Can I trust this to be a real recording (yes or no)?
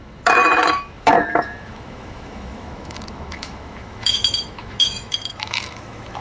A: no